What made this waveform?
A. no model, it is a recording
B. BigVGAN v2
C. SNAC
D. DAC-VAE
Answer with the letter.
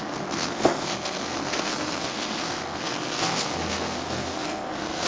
C